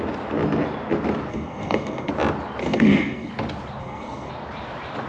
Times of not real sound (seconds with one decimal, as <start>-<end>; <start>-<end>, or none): 1.3-2.1; 2.6-3.3; 3.8-4.3

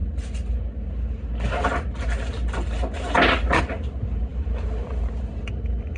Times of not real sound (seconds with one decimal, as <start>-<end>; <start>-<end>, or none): none

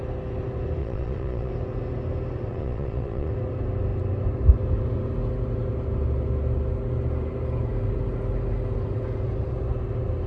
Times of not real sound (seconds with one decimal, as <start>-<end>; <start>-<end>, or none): 0.8-1.5; 2.5-3.3